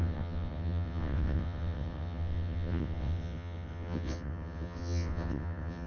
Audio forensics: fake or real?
fake